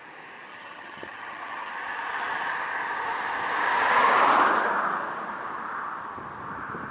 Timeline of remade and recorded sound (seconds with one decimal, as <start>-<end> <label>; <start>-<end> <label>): 0.0-0.5 recorded; 0.5-1.7 remade; 1.7-6.9 recorded